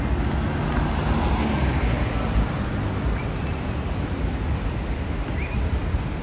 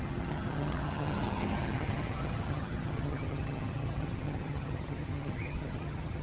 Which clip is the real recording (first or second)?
first